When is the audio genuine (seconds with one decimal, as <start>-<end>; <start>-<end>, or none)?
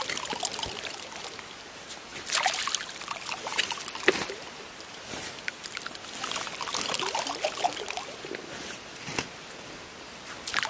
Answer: 0.0-2.1; 3.0-10.7